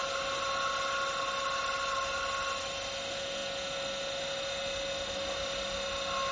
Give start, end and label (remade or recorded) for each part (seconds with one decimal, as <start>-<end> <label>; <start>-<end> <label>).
0.0-6.3 recorded